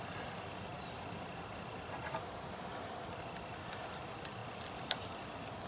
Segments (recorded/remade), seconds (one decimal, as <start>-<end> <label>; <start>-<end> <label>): 0.0-0.7 recorded; 0.7-4.0 remade; 4.0-5.7 recorded